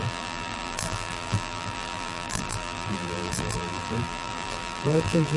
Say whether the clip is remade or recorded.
remade